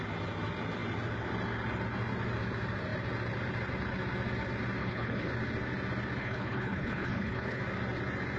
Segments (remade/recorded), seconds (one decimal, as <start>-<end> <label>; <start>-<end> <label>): 0.0-4.8 recorded; 4.8-5.3 remade; 5.3-6.2 recorded; 6.2-7.6 remade; 7.6-8.4 recorded

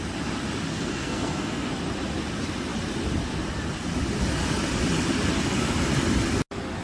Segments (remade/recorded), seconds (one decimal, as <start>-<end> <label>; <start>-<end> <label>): 0.0-0.7 recorded; 0.7-1.7 remade; 1.7-6.8 recorded

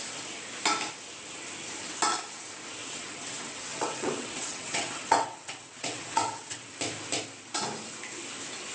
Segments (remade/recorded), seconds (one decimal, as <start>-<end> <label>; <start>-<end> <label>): 0.0-2.8 recorded; 2.8-6.7 remade; 6.7-8.7 recorded

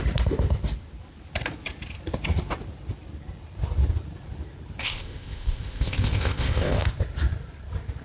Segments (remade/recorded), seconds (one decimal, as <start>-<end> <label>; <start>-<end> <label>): 0.0-4.8 recorded; 4.8-6.8 remade; 6.8-8.0 recorded

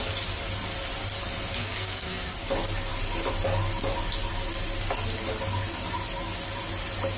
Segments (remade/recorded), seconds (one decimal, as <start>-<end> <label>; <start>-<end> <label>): 0.0-1.6 recorded; 1.6-2.3 remade; 2.3-7.2 recorded

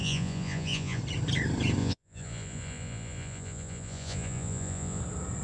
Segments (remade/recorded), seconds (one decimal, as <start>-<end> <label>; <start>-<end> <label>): 0.0-1.0 remade; 1.0-1.8 recorded; 1.8-5.0 remade; 5.0-5.4 recorded

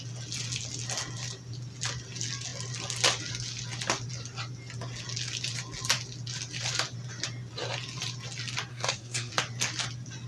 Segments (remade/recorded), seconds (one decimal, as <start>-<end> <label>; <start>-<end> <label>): 0.0-8.7 recorded; 8.7-9.3 remade; 9.3-10.3 recorded

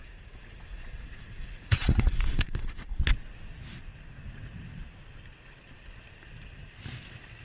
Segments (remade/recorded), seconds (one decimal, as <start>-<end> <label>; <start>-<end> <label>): 0.0-3.0 remade; 3.0-7.4 recorded